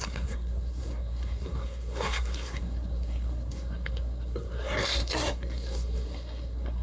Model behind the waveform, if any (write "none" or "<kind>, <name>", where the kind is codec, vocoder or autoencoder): codec, SNAC